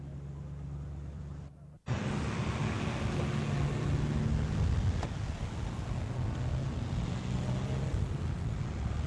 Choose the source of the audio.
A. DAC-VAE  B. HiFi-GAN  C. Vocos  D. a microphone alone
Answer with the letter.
D